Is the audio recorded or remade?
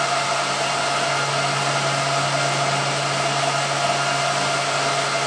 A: recorded